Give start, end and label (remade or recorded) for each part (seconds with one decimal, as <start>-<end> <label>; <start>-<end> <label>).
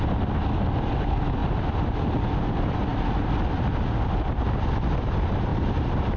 0.0-5.5 recorded; 5.5-6.2 remade